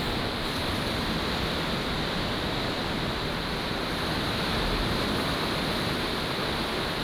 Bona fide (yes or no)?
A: yes